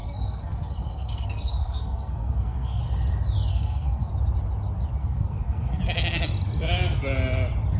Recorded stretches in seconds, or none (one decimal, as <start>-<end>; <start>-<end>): 2.8-3.5; 4.1-5.0; 5.8-7.8